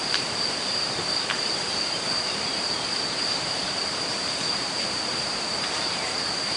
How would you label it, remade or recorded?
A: remade